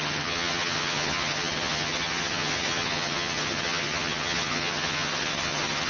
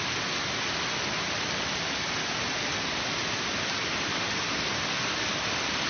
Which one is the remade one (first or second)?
first